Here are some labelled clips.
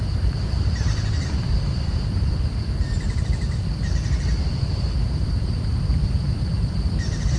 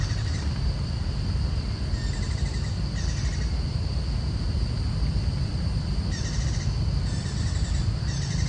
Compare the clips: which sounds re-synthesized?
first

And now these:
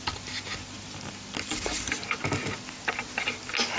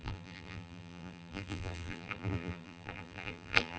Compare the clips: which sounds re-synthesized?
second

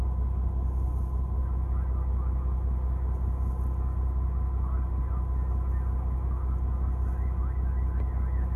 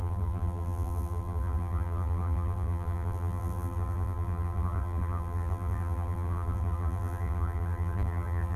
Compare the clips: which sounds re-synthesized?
second